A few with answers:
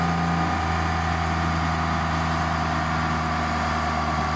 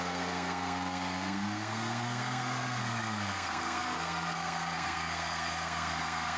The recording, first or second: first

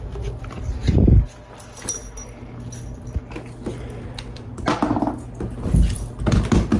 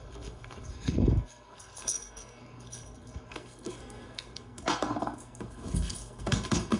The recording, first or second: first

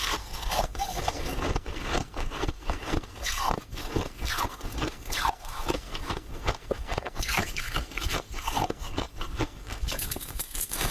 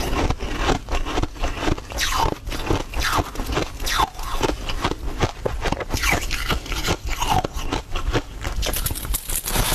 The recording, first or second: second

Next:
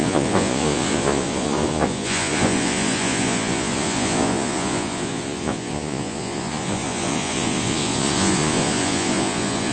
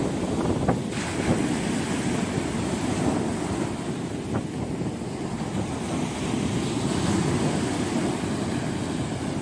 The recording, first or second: second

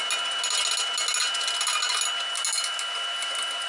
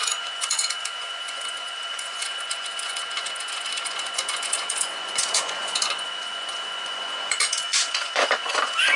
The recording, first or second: first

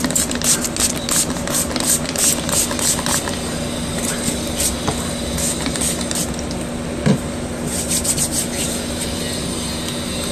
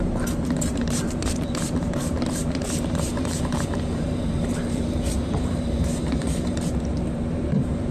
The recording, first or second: first